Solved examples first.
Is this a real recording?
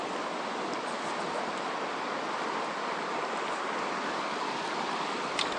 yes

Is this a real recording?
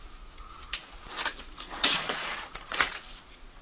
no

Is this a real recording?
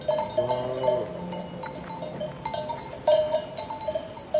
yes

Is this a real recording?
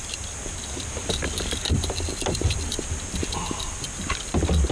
yes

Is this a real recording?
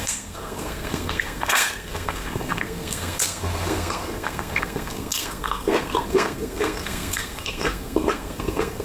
no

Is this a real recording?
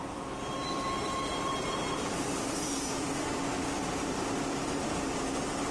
no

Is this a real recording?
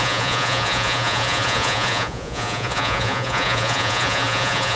no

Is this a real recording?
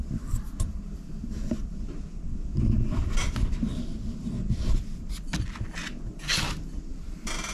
yes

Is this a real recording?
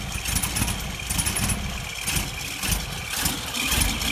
yes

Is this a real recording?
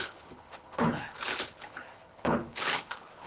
no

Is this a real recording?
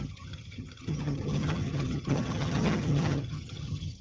no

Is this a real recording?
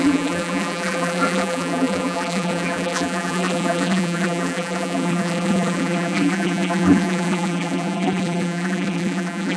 no